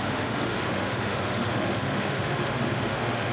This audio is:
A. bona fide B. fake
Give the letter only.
B